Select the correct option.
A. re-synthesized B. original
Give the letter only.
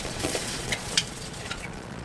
A